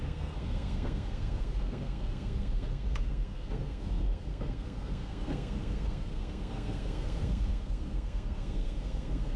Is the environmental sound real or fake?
fake